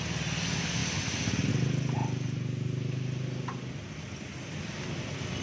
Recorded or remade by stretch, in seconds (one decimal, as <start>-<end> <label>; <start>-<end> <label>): 0.0-5.4 recorded